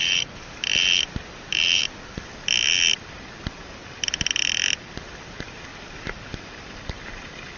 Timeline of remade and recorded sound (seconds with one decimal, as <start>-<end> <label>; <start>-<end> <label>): 0.0-1.8 remade; 1.8-3.8 recorded; 3.8-4.9 remade; 4.9-5.7 recorded; 5.7-6.8 remade; 6.8-7.6 recorded

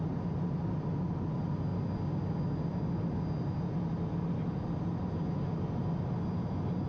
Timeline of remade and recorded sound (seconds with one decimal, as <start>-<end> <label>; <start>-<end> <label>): 0.0-6.9 recorded

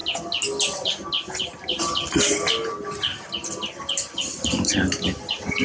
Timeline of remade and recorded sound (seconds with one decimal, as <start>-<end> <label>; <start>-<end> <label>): 0.0-5.6 recorded